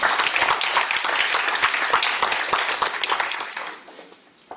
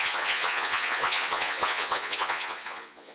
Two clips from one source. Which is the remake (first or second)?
second